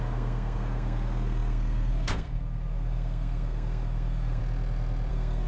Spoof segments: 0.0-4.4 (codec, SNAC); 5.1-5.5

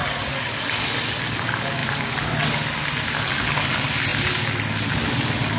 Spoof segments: none

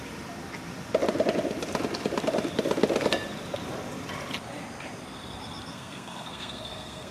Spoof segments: 5.7-7.1 (codec, SNAC)

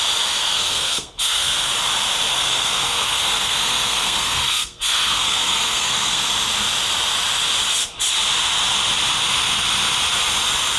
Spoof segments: 0.4-1.7 (codec, SNAC); 2.3-6.2